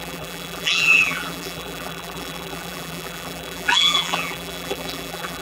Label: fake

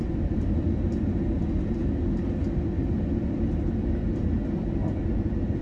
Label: real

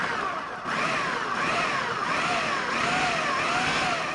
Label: real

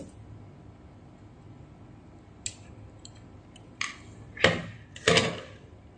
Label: real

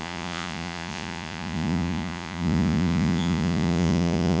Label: fake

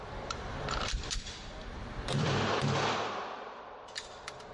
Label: fake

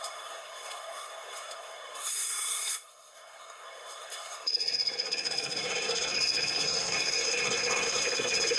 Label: fake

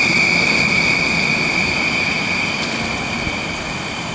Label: real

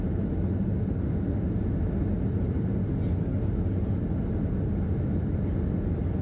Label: real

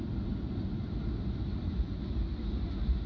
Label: real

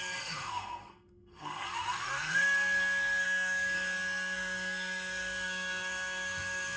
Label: fake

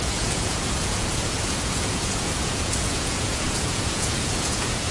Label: fake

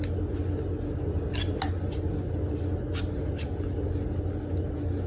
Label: real